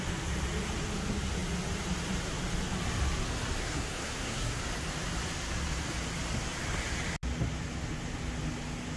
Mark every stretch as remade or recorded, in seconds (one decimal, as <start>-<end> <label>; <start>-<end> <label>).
0.0-3.6 recorded; 3.6-4.6 remade; 4.6-9.0 recorded